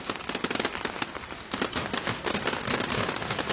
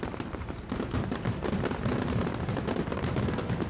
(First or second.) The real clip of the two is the first